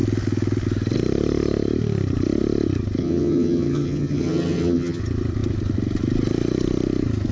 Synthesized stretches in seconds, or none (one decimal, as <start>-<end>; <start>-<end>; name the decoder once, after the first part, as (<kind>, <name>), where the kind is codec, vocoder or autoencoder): 3.0-5.0 (vocoder, HiFi-GAN)